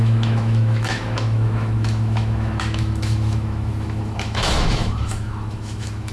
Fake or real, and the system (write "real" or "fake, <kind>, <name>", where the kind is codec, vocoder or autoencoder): fake, autoencoder, DAC-VAE